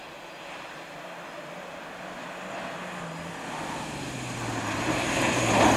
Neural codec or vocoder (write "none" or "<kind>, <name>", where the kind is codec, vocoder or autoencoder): none